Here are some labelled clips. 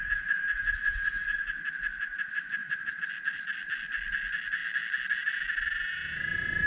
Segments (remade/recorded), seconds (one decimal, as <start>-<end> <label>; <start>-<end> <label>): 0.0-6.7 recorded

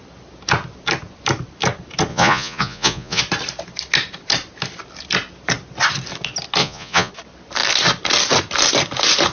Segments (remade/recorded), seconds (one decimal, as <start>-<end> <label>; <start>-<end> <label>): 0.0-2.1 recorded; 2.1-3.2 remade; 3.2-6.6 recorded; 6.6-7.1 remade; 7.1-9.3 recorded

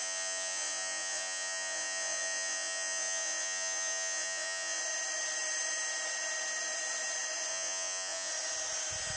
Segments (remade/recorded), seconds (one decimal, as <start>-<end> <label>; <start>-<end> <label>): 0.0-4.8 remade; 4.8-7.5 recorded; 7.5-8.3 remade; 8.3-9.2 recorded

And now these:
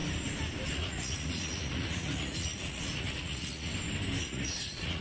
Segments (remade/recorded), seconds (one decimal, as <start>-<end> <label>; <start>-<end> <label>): 0.0-0.7 recorded; 0.7-3.7 remade; 3.7-4.2 recorded; 4.2-5.0 remade

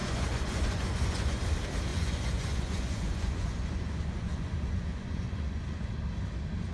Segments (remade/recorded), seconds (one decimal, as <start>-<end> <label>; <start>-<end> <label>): 0.0-1.4 remade; 1.4-1.9 recorded; 1.9-5.9 remade; 5.9-6.7 recorded